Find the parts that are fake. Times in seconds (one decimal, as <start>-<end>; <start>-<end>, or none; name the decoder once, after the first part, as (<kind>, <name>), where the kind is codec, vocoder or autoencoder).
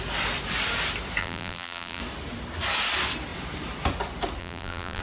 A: 1.2-2.0 (vocoder, BigVGAN v2); 4.4-5.0